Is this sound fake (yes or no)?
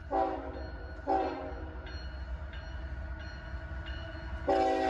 no